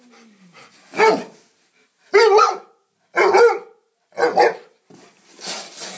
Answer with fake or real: real